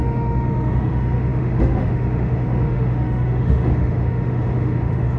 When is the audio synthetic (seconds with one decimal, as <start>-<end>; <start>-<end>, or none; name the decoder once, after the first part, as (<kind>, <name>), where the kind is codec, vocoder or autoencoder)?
0.0-5.2 (autoencoder, DAC-VAE)